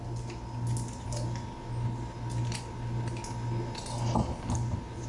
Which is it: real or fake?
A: real